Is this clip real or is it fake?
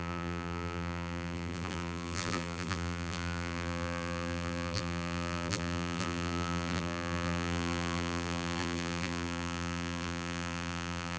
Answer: fake